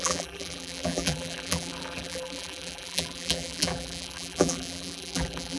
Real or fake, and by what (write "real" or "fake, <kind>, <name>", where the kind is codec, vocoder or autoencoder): fake, vocoder, BigVGAN v2